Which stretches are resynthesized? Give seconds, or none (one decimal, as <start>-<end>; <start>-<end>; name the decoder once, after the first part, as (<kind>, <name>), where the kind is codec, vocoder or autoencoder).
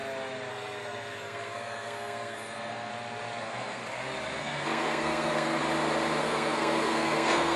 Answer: 0.5-2.9 (codec, SNAC); 3.4-3.8; 4.4-5.6; 6.2-7.6